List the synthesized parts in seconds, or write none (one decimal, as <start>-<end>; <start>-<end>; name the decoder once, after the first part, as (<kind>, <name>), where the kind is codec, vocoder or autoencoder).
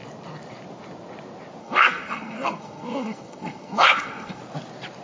1.6-4.4 (codec, SNAC)